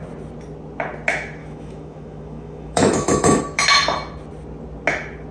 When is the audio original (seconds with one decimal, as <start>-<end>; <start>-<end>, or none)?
0.0-1.4; 3.4-5.3